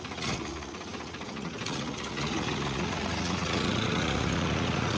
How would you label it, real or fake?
fake